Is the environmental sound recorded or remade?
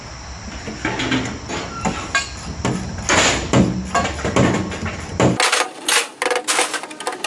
recorded